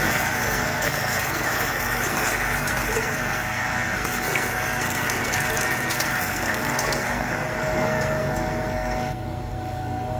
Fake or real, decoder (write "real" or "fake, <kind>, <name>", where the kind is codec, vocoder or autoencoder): fake, codec, SNAC